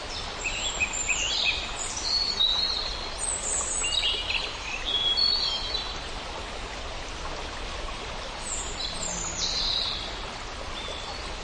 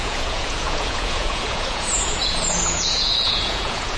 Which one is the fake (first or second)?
second